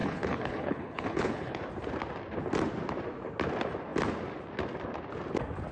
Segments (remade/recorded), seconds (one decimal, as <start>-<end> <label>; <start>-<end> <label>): 0.0-1.6 remade; 1.6-5.7 recorded